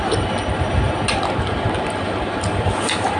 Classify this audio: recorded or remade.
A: recorded